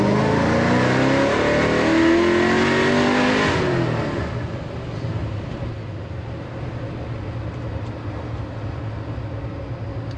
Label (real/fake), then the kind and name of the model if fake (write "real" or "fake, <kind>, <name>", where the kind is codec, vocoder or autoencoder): real